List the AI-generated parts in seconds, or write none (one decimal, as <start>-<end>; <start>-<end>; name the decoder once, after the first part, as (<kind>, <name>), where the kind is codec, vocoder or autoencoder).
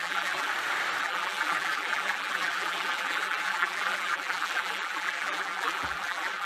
0.0-0.5 (vocoder, BigVGAN v2); 1.0-6.5